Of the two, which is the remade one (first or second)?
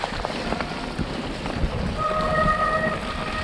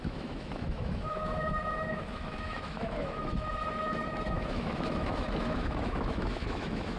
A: second